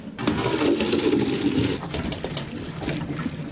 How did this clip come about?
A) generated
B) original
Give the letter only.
B